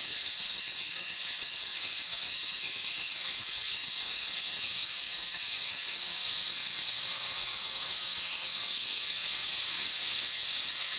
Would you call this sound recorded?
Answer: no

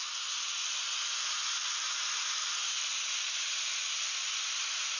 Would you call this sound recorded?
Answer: yes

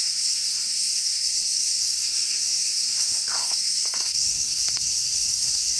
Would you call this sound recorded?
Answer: no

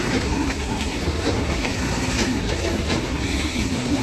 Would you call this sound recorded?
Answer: no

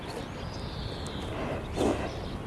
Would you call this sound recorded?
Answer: yes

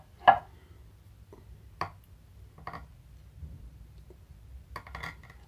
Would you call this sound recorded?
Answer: yes